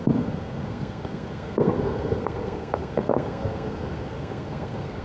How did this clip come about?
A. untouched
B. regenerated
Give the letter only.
B